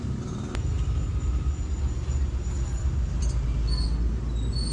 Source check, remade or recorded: recorded